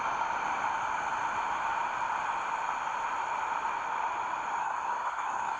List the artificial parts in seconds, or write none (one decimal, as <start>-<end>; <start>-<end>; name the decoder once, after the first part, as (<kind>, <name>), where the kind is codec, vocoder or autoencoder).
4.6-5.6 (codec, SNAC)